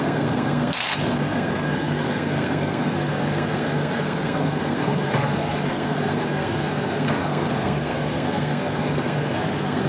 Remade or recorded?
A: remade